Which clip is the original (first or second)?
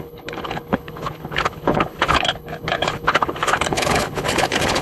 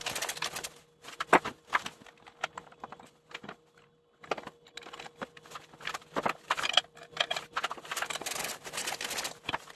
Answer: second